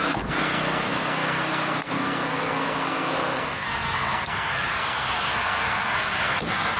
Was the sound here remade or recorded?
remade